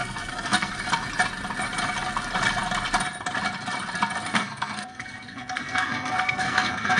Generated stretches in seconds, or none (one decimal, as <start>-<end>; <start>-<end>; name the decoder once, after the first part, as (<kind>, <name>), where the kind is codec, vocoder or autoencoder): 0.0-0.7 (codec, SNAC); 4.3-7.0